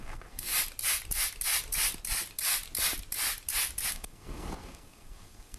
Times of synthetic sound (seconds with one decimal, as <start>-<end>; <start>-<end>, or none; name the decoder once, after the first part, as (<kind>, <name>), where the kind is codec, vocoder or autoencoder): 0.0-0.5 (codec, SNAC); 3.9-5.6